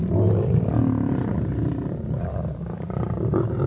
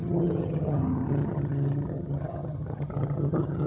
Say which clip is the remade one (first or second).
second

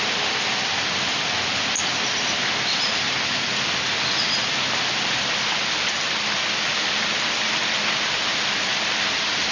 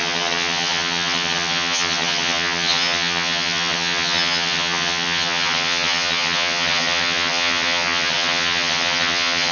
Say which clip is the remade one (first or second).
second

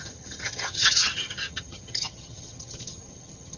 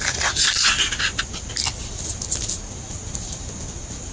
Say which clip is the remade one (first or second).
first